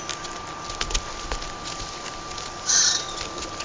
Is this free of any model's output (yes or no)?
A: yes